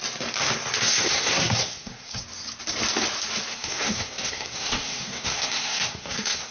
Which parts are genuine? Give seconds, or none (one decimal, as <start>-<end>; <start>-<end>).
0.0-0.8; 2.2-3.5